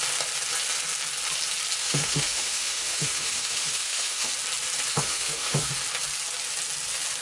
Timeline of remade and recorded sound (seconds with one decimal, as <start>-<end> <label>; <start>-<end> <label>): 0.0-1.8 recorded; 1.8-4.3 remade; 4.3-4.9 recorded; 4.9-5.7 remade; 5.7-7.2 recorded